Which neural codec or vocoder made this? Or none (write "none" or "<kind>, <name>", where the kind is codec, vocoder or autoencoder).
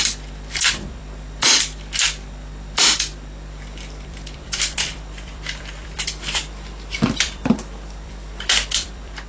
vocoder, BigVGAN v2